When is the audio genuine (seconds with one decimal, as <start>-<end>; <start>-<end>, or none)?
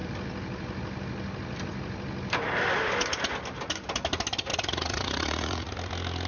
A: 0.0-4.5; 5.7-6.3